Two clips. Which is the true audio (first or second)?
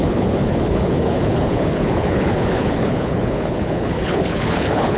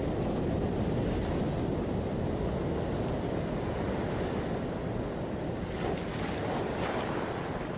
second